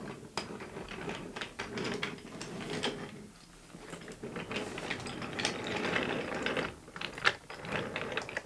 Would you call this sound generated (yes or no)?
no